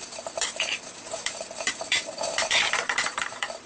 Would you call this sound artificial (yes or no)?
yes